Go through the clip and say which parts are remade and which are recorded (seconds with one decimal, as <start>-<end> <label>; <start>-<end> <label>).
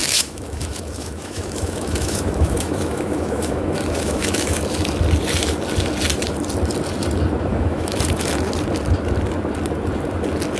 0.0-4.6 remade; 4.6-7.5 recorded; 7.5-8.3 remade; 8.3-10.6 recorded